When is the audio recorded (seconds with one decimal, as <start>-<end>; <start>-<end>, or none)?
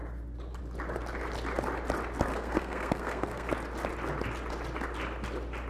0.0-2.3; 3.5-5.7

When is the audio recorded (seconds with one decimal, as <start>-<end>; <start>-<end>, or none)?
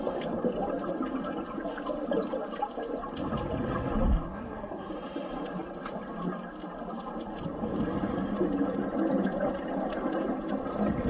0.0-4.1; 4.9-11.1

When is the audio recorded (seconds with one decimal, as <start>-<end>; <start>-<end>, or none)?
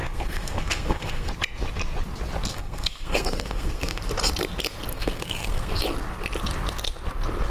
1.3-2.5; 4.0-4.9; 5.8-7.5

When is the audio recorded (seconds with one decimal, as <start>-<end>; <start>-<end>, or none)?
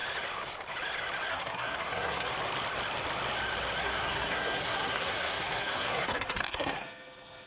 0.0-1.3; 2.3-3.8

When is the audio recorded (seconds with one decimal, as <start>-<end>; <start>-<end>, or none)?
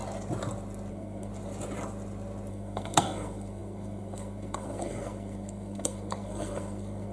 0.0-0.9; 1.3-2.5